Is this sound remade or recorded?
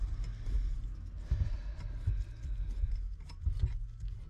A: recorded